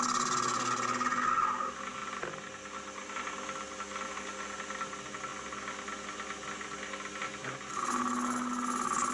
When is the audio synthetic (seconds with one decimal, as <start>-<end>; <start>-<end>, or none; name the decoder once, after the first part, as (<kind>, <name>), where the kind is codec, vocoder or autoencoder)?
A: none